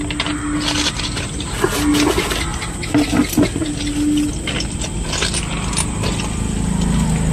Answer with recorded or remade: recorded